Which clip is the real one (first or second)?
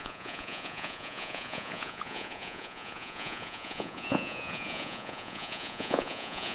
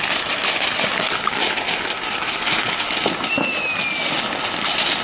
second